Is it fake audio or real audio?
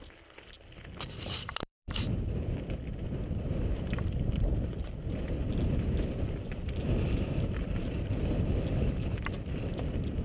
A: fake